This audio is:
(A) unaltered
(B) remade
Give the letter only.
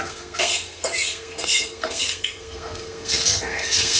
B